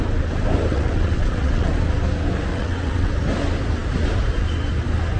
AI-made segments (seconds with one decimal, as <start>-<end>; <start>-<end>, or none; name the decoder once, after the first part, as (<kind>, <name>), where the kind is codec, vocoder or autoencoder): 0.7-1.7 (vocoder, WaveNeXt); 2.5-3.1